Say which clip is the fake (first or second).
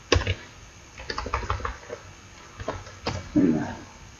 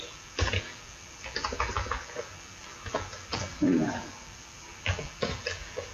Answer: second